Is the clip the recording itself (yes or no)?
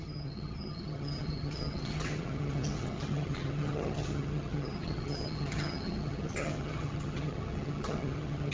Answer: no